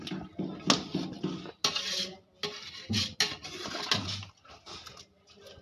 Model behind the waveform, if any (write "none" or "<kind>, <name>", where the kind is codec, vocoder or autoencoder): none